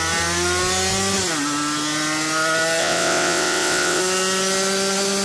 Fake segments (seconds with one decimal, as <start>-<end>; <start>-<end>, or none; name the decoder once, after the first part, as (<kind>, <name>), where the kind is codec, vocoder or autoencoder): 2.8-4.0 (vocoder, WaveNeXt)